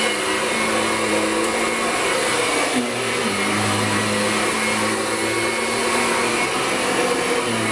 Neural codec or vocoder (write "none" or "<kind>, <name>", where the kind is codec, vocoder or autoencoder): none